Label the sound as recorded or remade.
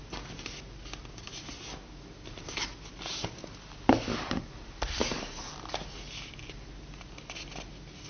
recorded